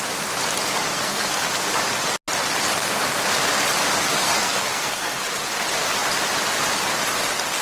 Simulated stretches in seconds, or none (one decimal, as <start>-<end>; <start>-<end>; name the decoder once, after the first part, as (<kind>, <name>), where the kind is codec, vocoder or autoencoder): 0.9-1.4 (codec, SNAC); 4.2-5.4